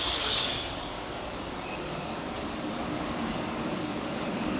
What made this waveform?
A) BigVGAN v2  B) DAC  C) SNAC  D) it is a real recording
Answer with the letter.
B